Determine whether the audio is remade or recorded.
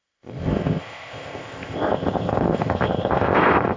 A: remade